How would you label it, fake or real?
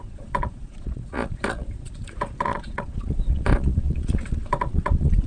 fake